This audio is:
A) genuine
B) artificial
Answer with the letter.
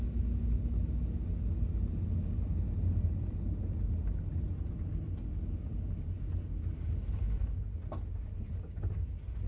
A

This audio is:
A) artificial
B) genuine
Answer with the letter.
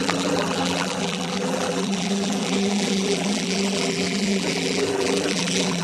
A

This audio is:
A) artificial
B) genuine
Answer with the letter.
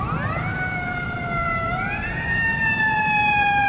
A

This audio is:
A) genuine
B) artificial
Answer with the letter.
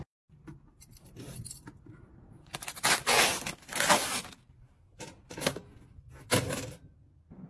A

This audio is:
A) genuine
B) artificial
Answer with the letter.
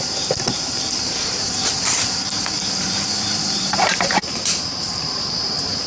B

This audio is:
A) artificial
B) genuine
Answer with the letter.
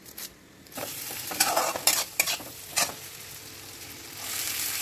A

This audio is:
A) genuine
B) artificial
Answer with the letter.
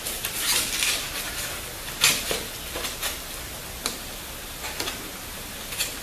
A